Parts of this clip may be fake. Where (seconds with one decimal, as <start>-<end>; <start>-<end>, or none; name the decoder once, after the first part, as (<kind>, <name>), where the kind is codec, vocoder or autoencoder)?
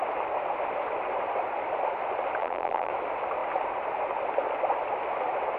2.4-2.9 (vocoder, BigVGAN v2)